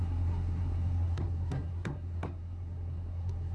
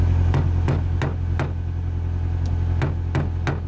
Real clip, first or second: second